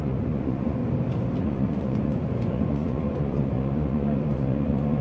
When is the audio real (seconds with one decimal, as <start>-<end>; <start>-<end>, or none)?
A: 0.8-1.4